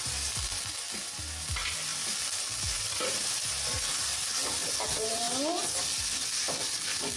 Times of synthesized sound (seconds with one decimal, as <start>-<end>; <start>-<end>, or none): none